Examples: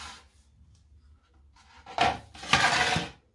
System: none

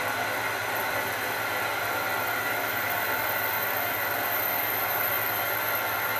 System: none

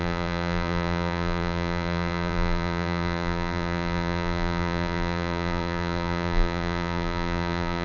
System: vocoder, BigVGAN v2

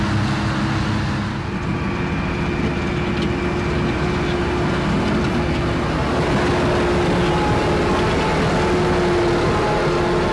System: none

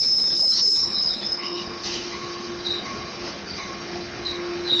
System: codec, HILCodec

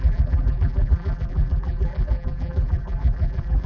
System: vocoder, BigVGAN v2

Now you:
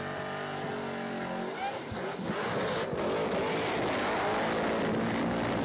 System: none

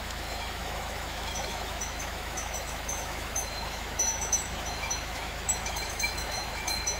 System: autoencoder, DAC-VAE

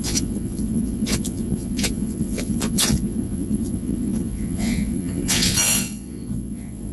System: vocoder, Vocos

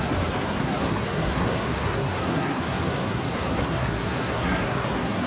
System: codec, SNAC